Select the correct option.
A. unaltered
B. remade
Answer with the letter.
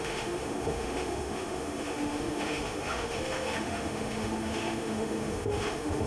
B